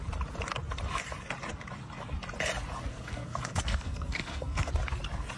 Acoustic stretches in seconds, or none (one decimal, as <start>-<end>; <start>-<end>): 0.0-2.9; 4.7-5.4